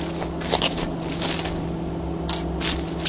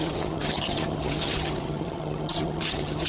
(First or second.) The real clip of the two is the first